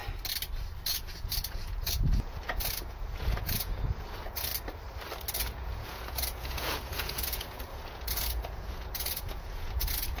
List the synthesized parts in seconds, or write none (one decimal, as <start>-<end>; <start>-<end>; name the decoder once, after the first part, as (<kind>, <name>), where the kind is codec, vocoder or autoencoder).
0.9-4.5 (vocoder, Vocos); 5.4-10.2